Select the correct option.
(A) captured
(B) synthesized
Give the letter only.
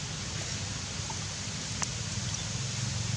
A